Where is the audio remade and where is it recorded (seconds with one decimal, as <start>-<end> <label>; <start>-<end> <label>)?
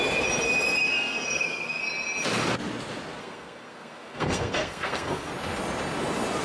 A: 0.0-0.8 recorded; 0.8-1.8 remade; 1.8-3.2 recorded; 3.2-5.3 remade; 5.3-6.4 recorded